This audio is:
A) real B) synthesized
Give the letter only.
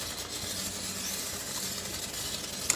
A